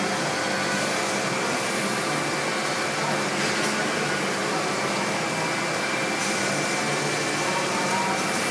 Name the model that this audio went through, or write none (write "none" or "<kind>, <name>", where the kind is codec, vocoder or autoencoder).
none